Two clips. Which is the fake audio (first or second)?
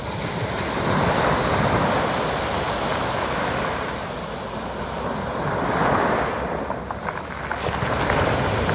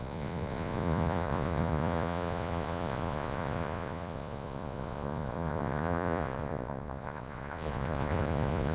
second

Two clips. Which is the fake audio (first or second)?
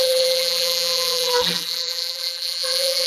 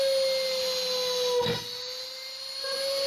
first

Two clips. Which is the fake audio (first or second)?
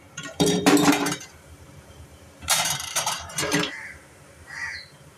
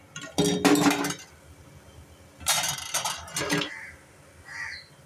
first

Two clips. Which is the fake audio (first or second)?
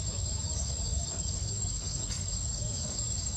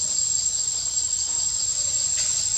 first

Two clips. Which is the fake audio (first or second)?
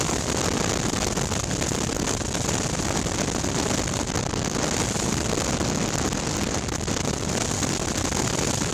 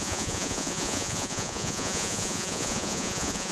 second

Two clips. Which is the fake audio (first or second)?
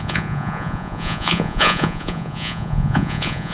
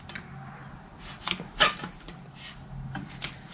first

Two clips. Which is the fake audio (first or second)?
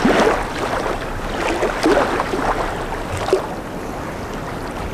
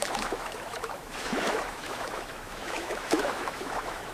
second